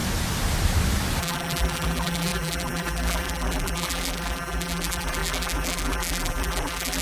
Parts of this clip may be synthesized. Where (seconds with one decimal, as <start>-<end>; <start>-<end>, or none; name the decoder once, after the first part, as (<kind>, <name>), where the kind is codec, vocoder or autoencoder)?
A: 1.2-7.0 (vocoder, BigVGAN v2)